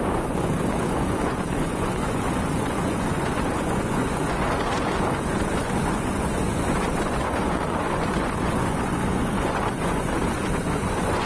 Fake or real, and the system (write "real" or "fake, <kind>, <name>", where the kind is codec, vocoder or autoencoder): fake, vocoder, Vocos